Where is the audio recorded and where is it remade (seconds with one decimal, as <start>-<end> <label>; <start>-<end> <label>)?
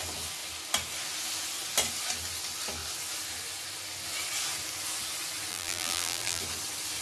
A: 0.0-5.5 recorded; 5.5-6.4 remade; 6.4-7.0 recorded